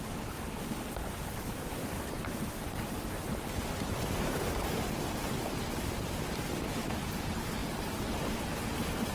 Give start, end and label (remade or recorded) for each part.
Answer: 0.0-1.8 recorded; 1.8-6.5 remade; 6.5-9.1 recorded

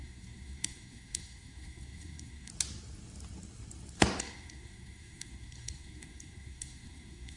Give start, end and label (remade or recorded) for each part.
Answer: 0.0-2.5 remade; 2.5-4.2 recorded; 4.2-7.4 remade

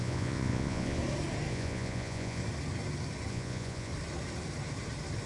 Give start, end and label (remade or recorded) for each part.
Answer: 0.0-1.0 remade; 1.0-1.5 recorded; 1.5-2.4 remade; 2.4-3.3 recorded; 3.3-3.9 remade; 3.9-5.3 recorded

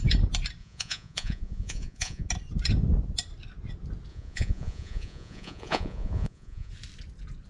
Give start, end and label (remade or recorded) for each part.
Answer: 0.0-0.6 recorded; 0.6-2.3 remade; 2.3-4.1 recorded; 4.1-6.7 remade; 6.7-7.5 recorded

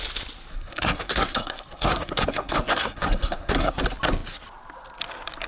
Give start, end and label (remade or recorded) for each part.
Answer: 0.0-0.5 recorded; 0.5-3.8 remade; 3.8-5.5 recorded

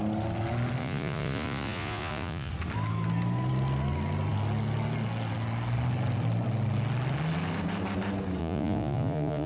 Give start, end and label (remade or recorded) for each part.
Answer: 0.0-0.8 recorded; 0.8-2.5 remade; 2.5-8.4 recorded; 8.4-9.5 remade

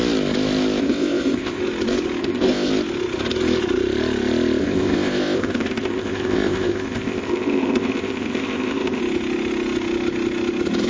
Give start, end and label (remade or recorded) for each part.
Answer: 0.0-0.8 recorded; 0.8-1.6 remade; 1.6-2.2 recorded; 2.2-2.7 remade; 2.7-4.6 recorded; 4.6-9.0 remade; 9.0-10.9 recorded

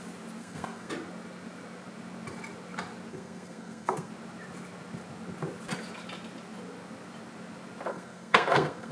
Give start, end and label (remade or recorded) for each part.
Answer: 0.0-0.4 recorded; 0.4-0.9 remade; 0.9-3.1 recorded; 3.1-4.1 remade; 4.1-7.9 recorded; 7.9-8.9 remade